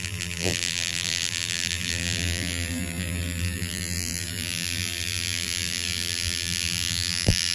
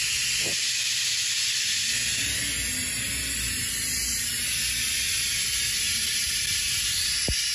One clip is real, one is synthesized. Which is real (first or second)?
second